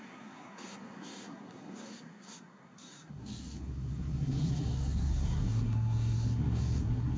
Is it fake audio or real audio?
fake